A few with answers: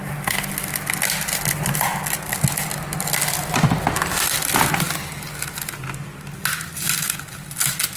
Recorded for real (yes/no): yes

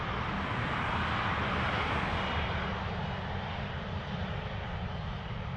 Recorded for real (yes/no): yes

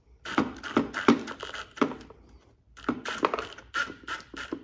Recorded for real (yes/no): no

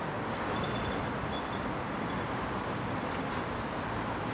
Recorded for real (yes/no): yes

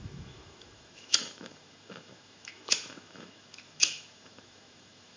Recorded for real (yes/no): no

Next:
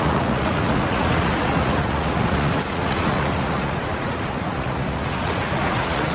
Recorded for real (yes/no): no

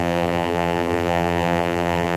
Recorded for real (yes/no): no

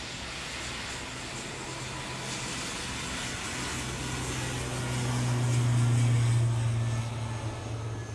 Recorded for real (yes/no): yes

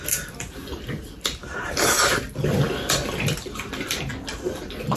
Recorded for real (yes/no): no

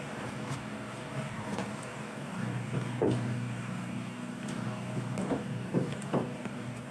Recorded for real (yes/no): no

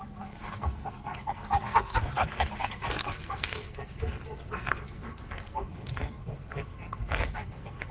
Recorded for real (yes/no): no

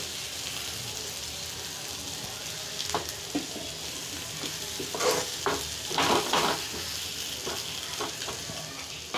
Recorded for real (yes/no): yes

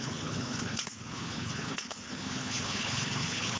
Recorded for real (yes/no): no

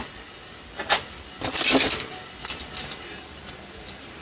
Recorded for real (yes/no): yes